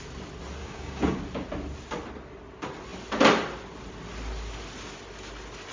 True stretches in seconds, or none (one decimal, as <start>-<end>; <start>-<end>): 0.0-0.6; 1.2-5.7